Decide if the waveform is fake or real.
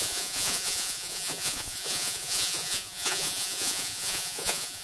fake